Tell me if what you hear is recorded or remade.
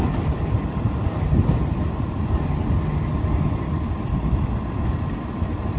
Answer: remade